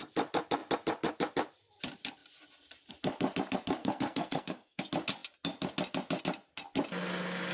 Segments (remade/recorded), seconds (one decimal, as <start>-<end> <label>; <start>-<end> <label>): 0.0-3.8 recorded; 3.8-4.8 remade; 4.8-7.5 recorded